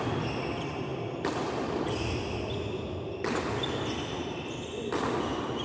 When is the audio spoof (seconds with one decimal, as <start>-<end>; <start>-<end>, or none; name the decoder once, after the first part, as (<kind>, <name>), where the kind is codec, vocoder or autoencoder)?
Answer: none